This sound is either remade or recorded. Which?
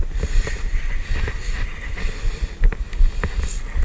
recorded